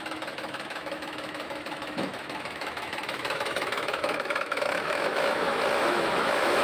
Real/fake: fake